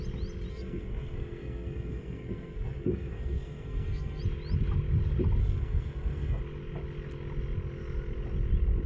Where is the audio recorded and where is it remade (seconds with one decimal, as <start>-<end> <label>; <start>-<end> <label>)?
0.0-0.5 recorded; 0.5-4.2 remade; 4.2-5.4 recorded; 5.4-6.4 remade; 6.4-8.9 recorded